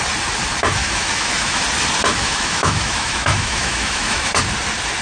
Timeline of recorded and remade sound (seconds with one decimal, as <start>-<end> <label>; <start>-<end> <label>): 0.0-0.8 recorded; 0.8-1.6 remade; 1.6-2.1 recorded; 2.1-4.3 remade; 4.3-5.0 recorded